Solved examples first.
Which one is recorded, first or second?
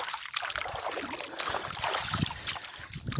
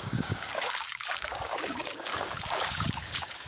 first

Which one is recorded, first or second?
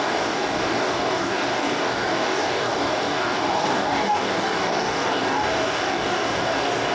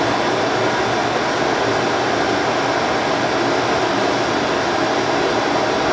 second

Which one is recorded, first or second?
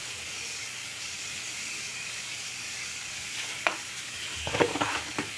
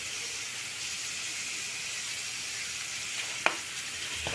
second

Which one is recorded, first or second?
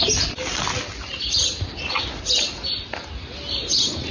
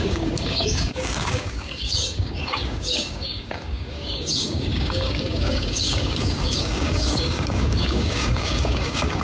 first